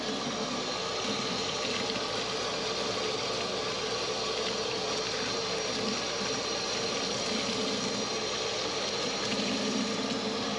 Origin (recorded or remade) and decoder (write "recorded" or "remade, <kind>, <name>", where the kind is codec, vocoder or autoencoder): recorded